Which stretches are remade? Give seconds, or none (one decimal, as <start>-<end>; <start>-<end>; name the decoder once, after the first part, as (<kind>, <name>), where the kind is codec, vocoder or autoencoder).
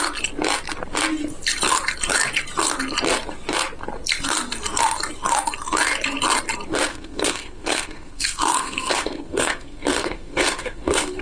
6.9-11.2 (codec, SNAC)